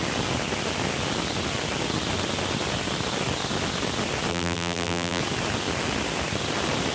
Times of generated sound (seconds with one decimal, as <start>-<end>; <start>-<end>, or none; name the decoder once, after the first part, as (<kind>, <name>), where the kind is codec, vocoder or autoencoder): 4.3-5.2 (vocoder, BigVGAN v2)